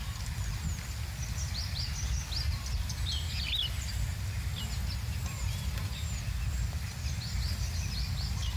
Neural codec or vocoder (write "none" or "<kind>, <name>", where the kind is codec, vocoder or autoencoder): none